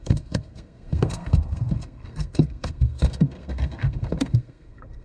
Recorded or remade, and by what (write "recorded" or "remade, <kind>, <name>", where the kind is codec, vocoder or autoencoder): remade, codec, SNAC